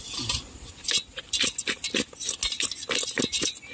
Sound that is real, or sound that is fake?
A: real